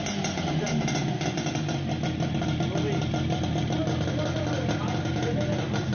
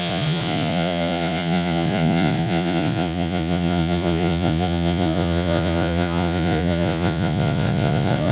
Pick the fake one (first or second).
second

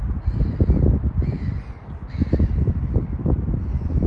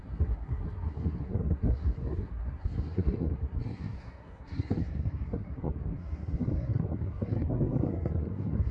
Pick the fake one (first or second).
second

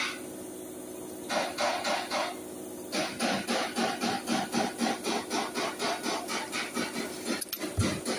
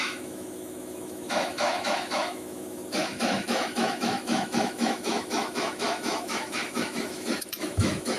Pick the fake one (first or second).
second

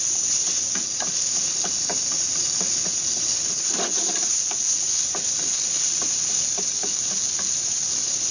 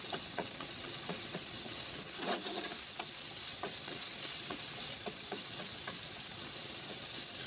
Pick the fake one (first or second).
second